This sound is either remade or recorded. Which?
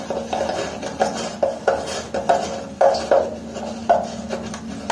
recorded